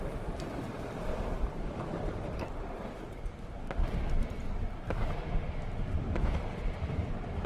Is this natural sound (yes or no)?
no